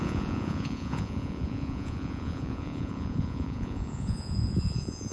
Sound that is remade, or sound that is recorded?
remade